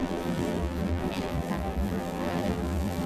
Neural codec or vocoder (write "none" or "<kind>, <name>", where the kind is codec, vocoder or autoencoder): vocoder, BigVGAN v2